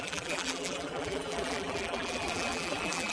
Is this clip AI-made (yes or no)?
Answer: yes